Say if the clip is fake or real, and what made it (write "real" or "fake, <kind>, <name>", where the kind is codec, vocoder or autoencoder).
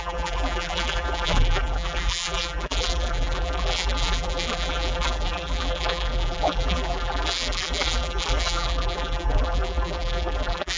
fake, vocoder, BigVGAN v2